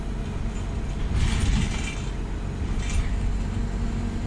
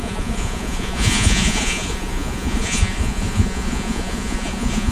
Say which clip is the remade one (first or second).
second